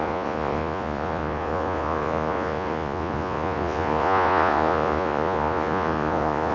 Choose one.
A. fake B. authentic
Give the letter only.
A